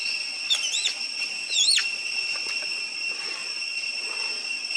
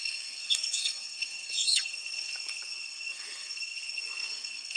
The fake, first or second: second